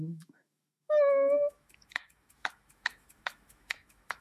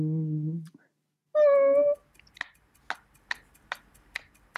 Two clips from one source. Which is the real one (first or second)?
second